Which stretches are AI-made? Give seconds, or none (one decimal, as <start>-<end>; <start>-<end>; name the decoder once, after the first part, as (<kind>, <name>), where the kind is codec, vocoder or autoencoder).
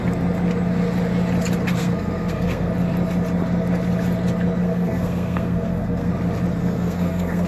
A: 1.7-2.7 (codec, SNAC); 4.6-6.1; 6.6-7.5